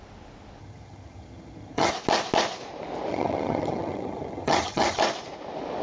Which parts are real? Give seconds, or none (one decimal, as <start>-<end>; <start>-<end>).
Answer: 0.0-0.6; 1.9-3.1; 5.0-5.8

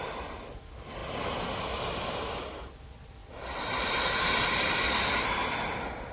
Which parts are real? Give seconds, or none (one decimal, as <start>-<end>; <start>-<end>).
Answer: 0.0-6.1

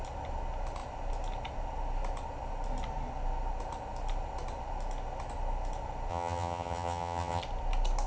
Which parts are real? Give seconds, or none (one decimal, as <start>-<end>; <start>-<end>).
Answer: 0.0-6.1; 7.4-8.1

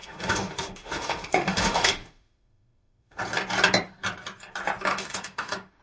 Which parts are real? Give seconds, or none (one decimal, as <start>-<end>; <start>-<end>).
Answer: 3.2-4.9